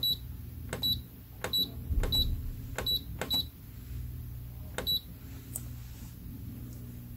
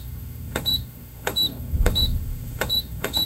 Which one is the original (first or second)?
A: first